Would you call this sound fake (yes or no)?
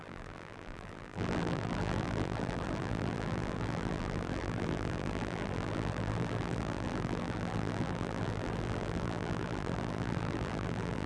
yes